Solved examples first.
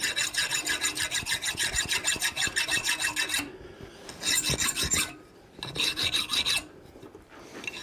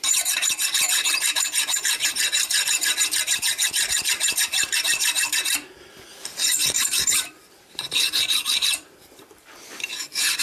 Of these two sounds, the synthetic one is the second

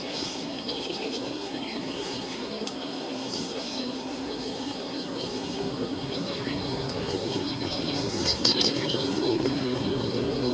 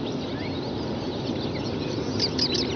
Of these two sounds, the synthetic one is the first